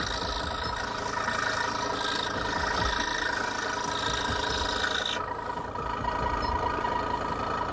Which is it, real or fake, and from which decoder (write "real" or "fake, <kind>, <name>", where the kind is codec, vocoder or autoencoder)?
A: real